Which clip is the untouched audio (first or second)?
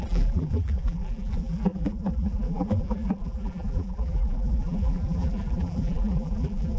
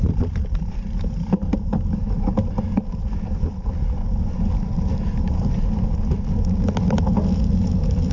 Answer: second